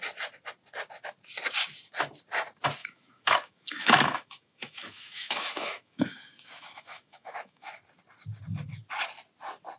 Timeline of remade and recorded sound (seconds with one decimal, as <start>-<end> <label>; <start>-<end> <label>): 0.0-2.8 recorded; 2.8-7.7 remade; 7.7-9.8 recorded

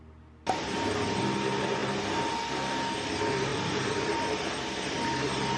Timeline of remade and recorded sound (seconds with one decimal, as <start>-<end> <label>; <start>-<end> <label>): 0.0-3.5 recorded; 3.5-5.6 remade

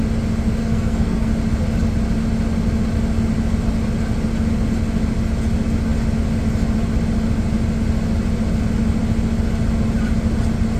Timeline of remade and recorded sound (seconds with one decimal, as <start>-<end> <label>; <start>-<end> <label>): 0.0-0.6 recorded; 0.6-1.3 remade; 1.3-10.8 recorded

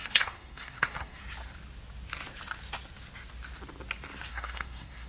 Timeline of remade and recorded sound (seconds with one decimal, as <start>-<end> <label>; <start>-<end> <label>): 0.0-1.2 remade; 1.2-4.3 recorded; 4.3-5.1 remade